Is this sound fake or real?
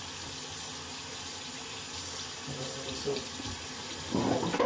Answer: real